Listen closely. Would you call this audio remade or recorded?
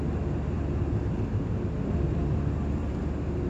recorded